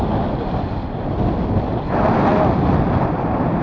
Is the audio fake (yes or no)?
no